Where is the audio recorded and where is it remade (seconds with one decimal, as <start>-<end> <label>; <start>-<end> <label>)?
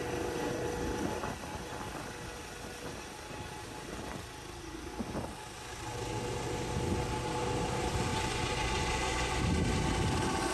0.0-8.1 recorded; 8.1-9.4 remade; 9.4-10.5 recorded